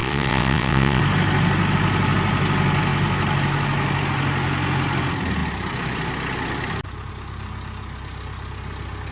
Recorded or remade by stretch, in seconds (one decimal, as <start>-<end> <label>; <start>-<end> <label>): 0.0-1.0 remade; 1.0-9.1 recorded